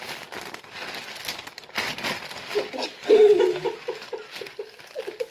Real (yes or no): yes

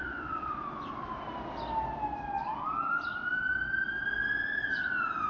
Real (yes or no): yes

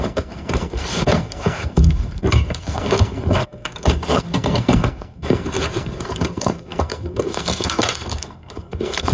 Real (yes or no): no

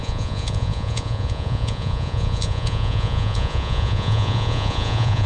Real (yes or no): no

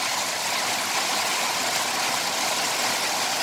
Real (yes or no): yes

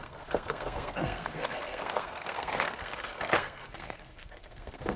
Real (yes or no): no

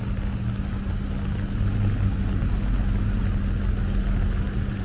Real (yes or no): yes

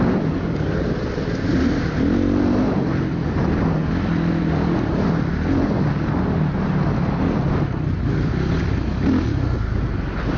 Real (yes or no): yes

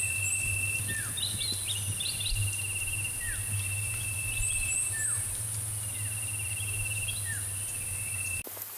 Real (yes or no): yes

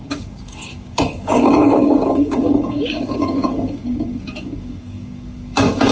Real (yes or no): no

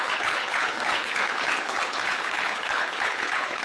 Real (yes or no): no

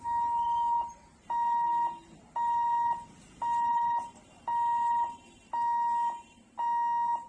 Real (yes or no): yes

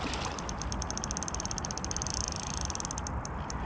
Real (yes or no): yes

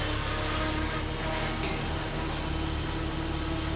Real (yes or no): yes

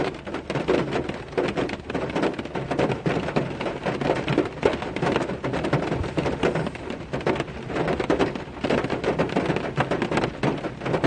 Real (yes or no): yes